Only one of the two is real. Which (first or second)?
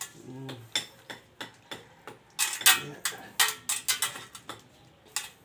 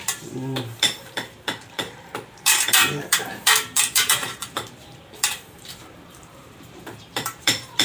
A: first